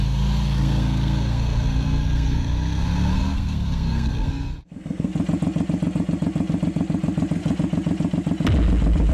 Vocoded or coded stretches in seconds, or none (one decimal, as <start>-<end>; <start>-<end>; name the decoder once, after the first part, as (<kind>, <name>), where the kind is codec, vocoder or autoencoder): 0.0-5.1 (codec, SNAC)